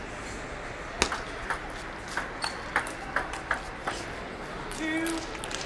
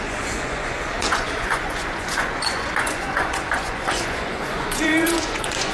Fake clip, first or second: second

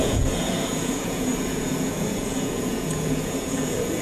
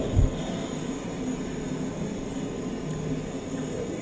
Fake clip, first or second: first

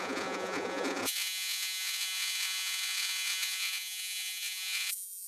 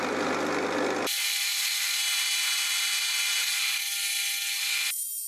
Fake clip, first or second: first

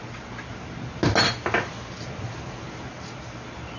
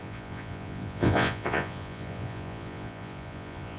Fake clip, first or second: second